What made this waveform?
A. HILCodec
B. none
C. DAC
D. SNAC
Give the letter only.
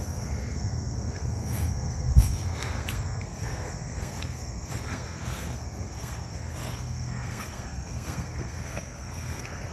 D